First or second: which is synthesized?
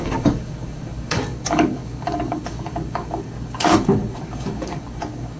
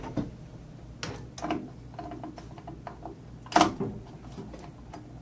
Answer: first